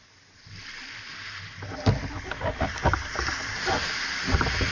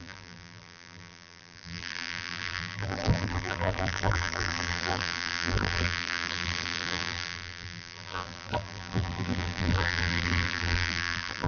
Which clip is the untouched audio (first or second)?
first